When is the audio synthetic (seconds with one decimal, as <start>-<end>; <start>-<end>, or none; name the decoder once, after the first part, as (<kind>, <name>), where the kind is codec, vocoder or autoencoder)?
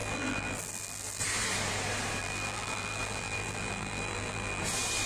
0.0-1.2 (vocoder, BigVGAN v2); 2.2-4.6